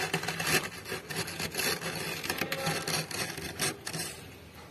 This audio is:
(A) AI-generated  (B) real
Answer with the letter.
B